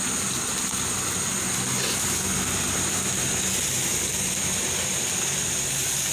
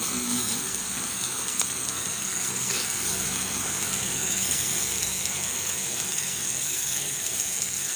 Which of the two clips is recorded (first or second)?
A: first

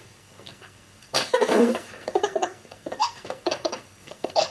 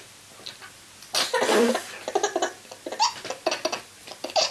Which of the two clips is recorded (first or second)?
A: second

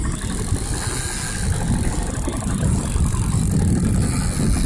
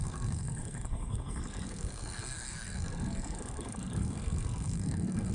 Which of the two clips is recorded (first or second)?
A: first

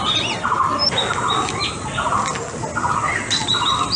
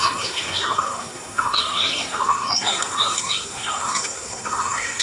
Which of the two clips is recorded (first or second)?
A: first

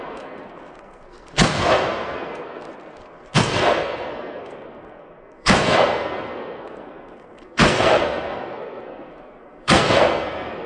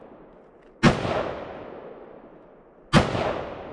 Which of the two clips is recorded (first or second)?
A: second